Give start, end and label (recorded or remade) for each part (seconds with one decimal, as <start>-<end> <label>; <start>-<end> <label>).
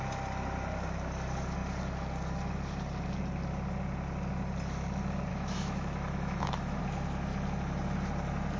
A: 0.0-5.3 recorded; 5.3-6.8 remade; 6.8-8.6 recorded